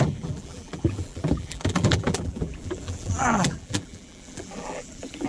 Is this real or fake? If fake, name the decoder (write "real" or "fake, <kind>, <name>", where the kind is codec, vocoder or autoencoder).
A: fake, vocoder, BigVGAN v2